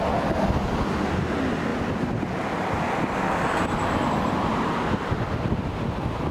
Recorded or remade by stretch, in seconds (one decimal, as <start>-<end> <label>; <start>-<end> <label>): 0.0-6.3 recorded